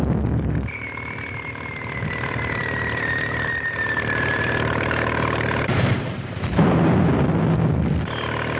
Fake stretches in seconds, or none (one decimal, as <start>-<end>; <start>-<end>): 2.6-7.7